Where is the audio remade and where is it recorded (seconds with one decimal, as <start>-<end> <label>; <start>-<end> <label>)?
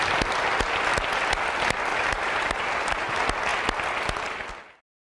0.0-1.9 recorded; 1.9-3.1 remade; 3.1-5.1 recorded